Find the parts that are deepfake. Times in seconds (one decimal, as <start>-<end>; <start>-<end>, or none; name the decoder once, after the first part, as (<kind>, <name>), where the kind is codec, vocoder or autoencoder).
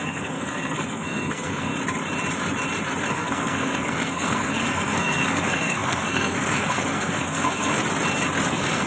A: 0.0-1.7 (codec, SNAC); 3.1-7.8; 8.5-8.9